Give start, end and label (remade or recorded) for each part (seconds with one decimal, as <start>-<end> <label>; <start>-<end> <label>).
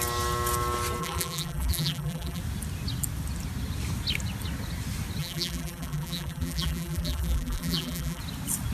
0.0-1.0 recorded; 1.0-2.4 remade; 2.4-5.2 recorded; 5.2-8.2 remade; 8.2-8.7 recorded